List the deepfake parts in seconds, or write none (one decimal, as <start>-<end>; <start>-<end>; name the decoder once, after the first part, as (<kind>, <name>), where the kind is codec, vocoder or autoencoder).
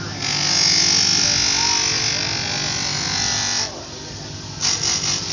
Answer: none